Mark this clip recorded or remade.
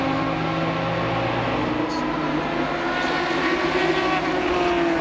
recorded